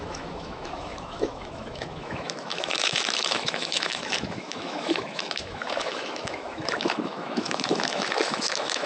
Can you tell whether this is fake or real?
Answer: fake